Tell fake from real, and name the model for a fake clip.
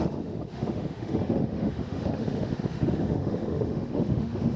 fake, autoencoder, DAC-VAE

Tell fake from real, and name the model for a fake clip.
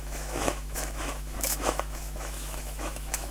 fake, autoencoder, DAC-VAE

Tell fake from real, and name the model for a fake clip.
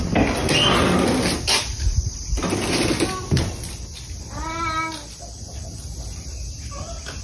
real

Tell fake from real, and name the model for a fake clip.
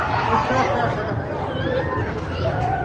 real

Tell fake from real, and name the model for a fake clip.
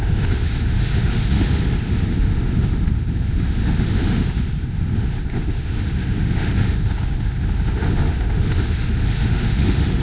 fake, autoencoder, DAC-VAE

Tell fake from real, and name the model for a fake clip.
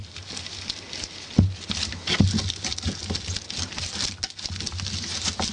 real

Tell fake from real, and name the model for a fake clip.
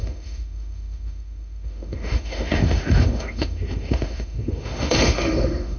fake, autoencoder, DAC-VAE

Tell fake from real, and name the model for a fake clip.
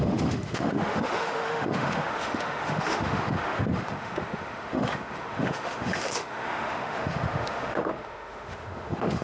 fake, autoencoder, DAC-VAE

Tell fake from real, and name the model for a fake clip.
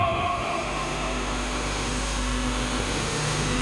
fake, autoencoder, DAC-VAE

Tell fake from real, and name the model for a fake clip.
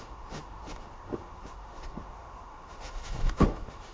fake, autoencoder, DAC-VAE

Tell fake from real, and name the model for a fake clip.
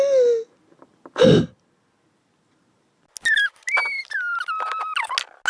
real